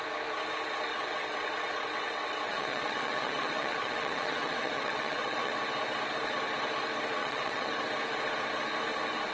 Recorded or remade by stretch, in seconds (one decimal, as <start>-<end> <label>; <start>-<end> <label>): 0.0-0.9 recorded; 0.9-5.5 remade; 5.5-7.2 recorded; 7.2-7.7 remade; 7.7-9.3 recorded